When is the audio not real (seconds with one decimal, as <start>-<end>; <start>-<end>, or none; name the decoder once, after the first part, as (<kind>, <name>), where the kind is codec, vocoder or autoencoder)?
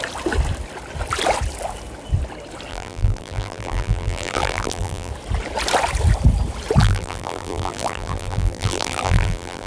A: 2.7-5.1 (vocoder, BigVGAN v2); 6.8-9.7